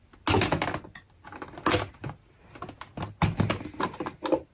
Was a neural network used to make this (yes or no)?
no